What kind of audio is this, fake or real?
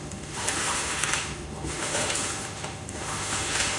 fake